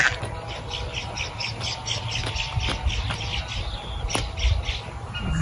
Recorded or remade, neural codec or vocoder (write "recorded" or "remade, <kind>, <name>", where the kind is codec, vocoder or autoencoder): recorded